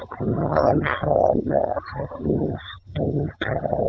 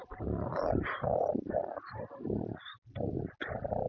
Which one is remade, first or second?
first